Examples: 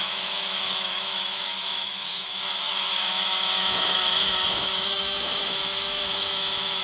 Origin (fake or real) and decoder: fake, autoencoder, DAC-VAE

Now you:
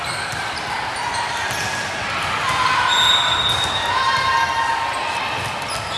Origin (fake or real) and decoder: real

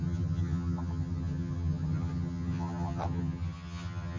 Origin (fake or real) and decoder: fake, vocoder, HiFi-GAN